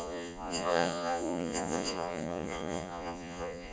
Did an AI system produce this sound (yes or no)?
yes